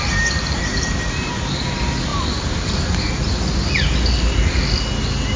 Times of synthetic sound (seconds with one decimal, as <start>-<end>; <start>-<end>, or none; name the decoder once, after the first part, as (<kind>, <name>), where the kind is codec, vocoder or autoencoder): none